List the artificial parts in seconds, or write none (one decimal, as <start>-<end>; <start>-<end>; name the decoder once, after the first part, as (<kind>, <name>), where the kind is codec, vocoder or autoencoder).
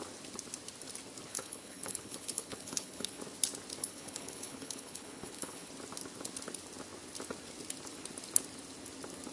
1.3-3.2 (codec, HILCodec); 3.8-5.7